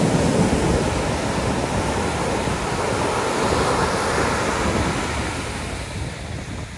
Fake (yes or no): no